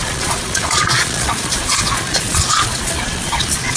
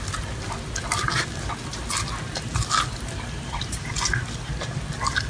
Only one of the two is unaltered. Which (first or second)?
second